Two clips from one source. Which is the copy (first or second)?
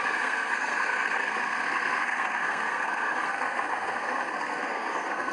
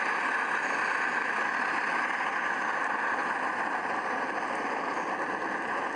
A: first